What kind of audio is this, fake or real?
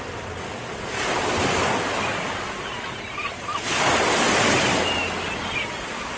real